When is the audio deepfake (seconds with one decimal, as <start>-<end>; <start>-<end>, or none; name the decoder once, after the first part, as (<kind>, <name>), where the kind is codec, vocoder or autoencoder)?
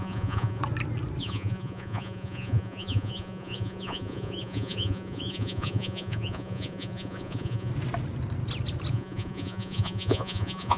0.0-0.6 (vocoder, Vocos); 1.2-7.7; 8.9-10.8